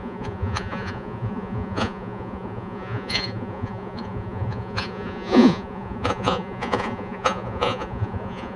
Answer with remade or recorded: remade